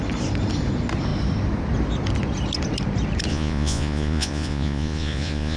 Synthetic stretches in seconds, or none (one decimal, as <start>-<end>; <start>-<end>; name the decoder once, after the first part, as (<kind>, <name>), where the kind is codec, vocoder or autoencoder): 3.3-5.6 (vocoder, Vocos)